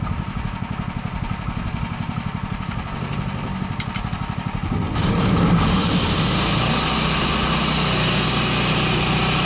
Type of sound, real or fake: real